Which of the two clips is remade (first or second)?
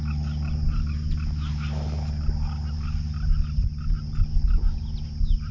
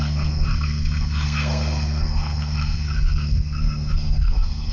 second